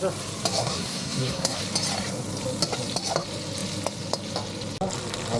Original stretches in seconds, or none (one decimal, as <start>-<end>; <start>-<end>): 0.0-0.6; 1.6-5.4

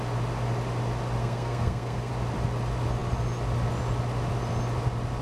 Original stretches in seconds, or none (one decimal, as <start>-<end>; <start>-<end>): 0.0-1.2; 2.1-5.2

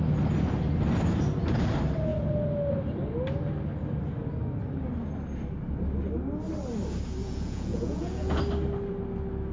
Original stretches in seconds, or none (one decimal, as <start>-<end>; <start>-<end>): 0.0-7.2; 8.4-9.5

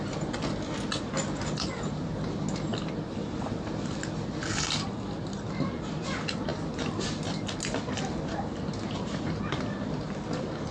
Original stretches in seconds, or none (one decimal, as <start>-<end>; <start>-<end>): 0.0-10.7

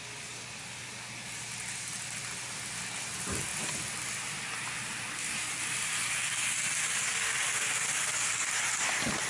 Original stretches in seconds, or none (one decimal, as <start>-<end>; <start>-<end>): 0.0-9.3

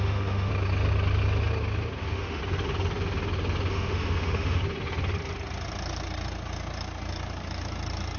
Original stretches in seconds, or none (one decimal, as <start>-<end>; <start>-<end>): 0.5-2.0; 2.4-3.7; 4.6-8.2